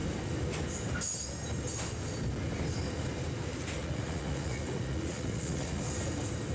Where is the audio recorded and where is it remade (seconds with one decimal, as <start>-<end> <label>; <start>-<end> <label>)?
0.0-3.8 recorded; 3.8-5.8 remade; 5.8-6.5 recorded